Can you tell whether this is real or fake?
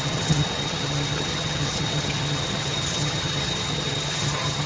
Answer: fake